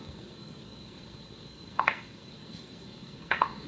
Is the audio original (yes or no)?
no